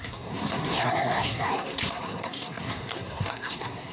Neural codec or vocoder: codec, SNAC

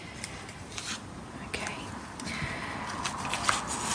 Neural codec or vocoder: none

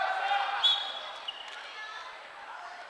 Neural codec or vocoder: none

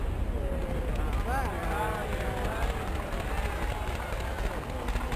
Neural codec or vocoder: none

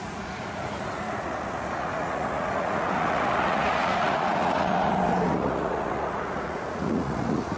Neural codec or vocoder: vocoder, Vocos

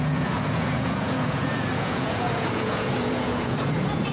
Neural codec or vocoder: vocoder, Vocos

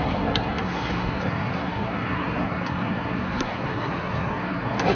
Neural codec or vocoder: codec, SNAC